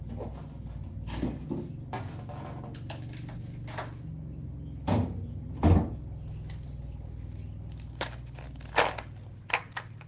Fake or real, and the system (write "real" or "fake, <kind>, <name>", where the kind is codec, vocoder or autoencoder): real